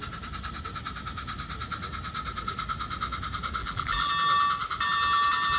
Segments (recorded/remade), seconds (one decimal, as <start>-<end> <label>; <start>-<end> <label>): 0.0-3.6 recorded; 3.6-4.1 remade; 4.1-5.6 recorded